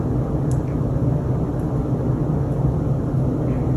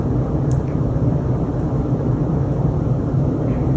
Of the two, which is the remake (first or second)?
second